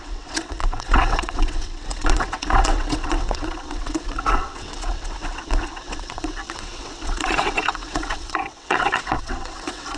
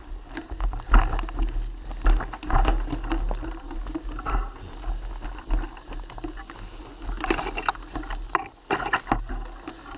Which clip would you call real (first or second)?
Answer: second